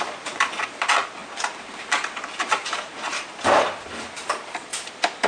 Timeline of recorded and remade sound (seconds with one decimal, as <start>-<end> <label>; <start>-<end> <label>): 0.0-4.7 remade; 4.7-5.3 recorded